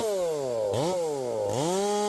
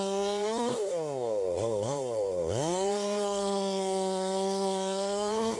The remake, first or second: second